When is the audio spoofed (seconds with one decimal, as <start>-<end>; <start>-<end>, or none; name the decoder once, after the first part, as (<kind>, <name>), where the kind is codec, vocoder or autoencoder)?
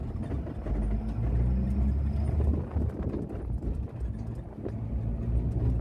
none